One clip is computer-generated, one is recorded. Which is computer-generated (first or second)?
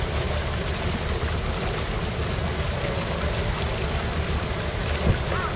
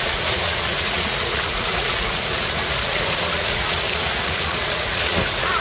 second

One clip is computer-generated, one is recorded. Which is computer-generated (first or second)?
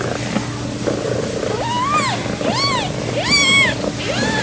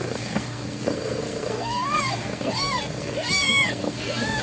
second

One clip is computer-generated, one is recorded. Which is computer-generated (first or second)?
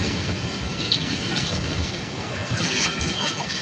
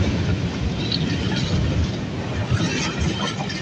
first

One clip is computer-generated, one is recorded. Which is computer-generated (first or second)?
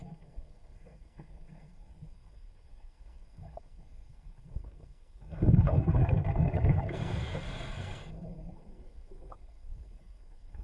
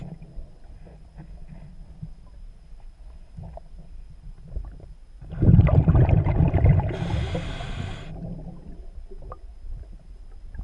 first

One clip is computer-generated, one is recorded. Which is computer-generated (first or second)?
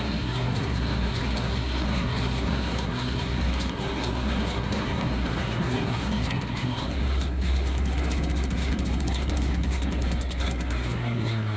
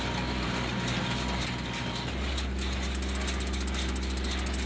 first